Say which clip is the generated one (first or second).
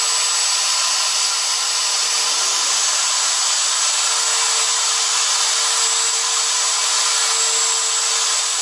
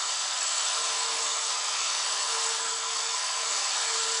second